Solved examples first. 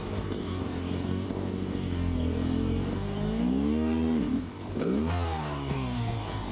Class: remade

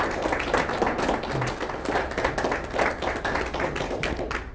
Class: recorded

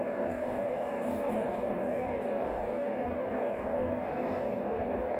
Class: remade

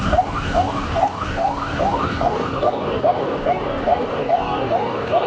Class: remade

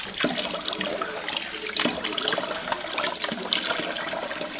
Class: recorded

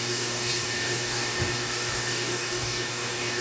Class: remade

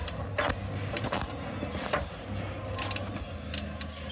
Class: recorded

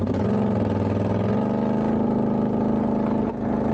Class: recorded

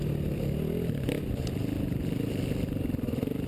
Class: recorded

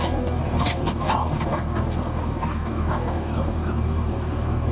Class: remade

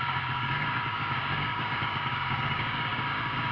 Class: remade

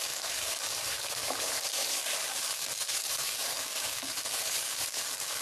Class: remade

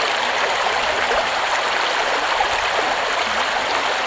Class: recorded